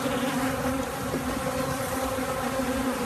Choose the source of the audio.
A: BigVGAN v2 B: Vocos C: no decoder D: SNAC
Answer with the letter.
C